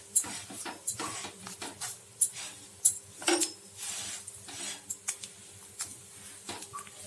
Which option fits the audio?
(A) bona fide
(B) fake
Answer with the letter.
A